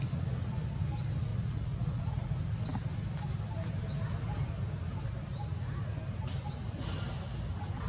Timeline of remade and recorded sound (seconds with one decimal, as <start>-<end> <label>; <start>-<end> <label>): 0.0-1.3 recorded; 1.3-2.3 remade; 2.3-7.9 recorded